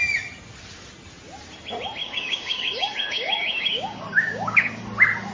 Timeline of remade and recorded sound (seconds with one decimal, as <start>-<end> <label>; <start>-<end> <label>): 0.0-2.0 recorded; 2.0-4.8 remade; 4.8-5.3 recorded

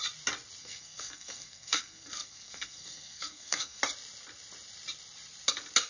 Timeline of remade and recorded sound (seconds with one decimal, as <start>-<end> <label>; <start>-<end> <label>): 0.0-0.6 recorded; 0.6-3.8 remade; 3.8-5.9 recorded

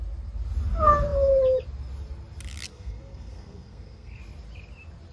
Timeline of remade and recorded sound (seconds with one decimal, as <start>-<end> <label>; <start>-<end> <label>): 0.0-2.7 recorded; 2.7-4.2 remade; 4.2-5.1 recorded

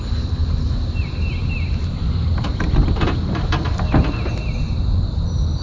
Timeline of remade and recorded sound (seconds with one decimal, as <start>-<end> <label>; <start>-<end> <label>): 0.0-5.6 recorded

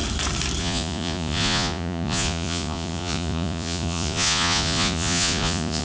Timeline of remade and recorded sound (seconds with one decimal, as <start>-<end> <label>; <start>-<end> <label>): 0.0-0.6 recorded; 0.6-5.8 remade